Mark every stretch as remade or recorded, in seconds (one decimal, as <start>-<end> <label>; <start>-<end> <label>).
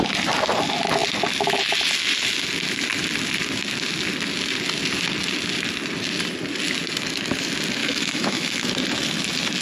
0.0-7.8 recorded; 7.8-8.7 remade; 8.7-9.6 recorded